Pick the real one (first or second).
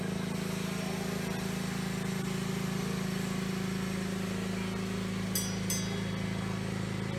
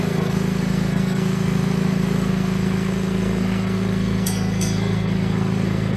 first